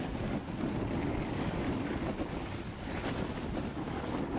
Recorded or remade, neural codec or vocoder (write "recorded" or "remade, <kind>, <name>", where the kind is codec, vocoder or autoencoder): recorded